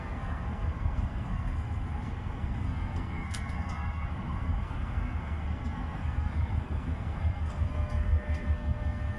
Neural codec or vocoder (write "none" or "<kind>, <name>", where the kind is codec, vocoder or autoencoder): codec, SNAC